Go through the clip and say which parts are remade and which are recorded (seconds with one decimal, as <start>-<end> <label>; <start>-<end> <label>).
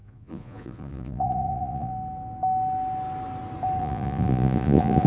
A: 0.0-1.9 remade; 1.9-3.8 recorded; 3.8-5.1 remade